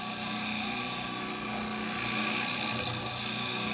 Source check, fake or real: real